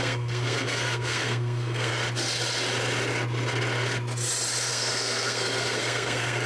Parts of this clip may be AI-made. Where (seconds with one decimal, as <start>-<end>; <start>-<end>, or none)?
0.0-1.9; 4.7-6.5